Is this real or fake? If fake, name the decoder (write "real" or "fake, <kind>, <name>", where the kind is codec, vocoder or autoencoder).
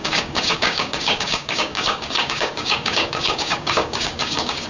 fake, codec, DAC